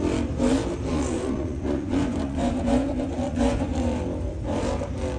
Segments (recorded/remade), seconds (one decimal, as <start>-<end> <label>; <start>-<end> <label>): 0.0-0.9 recorded; 0.9-4.0 remade; 4.0-5.2 recorded